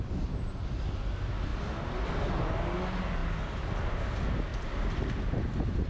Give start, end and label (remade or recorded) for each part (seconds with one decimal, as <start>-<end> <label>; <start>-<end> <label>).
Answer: 0.0-5.9 recorded